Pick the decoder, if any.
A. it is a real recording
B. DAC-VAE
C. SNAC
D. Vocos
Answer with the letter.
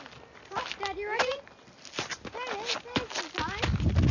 A